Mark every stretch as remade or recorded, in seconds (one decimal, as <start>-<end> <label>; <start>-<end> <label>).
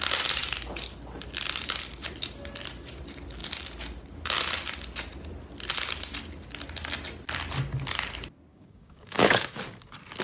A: 0.0-8.5 recorded; 8.5-9.6 remade; 9.6-10.2 recorded